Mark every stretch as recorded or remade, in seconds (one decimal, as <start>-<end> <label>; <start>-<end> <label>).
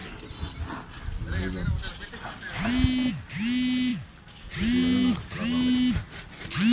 0.0-6.7 recorded